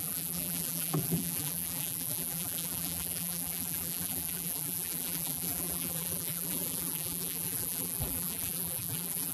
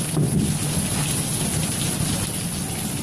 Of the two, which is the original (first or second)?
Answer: second